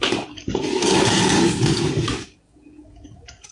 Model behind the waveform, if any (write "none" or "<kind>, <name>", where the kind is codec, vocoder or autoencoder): codec, DAC